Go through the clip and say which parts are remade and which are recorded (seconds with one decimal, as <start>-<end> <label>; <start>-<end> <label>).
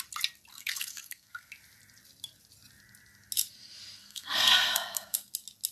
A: 0.0-0.5 recorded; 0.5-1.5 remade; 1.5-4.0 recorded; 4.0-5.3 remade; 5.3-5.7 recorded